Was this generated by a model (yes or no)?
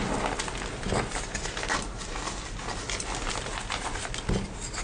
no